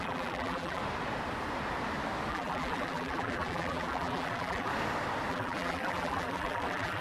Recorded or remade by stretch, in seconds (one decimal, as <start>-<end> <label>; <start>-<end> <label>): 0.0-0.8 remade; 0.8-2.3 recorded; 2.3-4.7 remade; 4.7-5.3 recorded; 5.3-7.0 remade